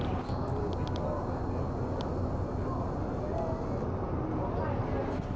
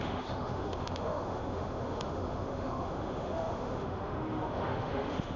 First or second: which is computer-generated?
second